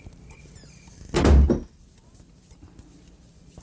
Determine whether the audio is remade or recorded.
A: recorded